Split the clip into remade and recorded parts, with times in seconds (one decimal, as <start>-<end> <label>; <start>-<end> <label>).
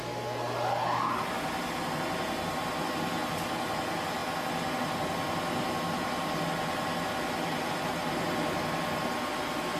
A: 0.0-9.8 recorded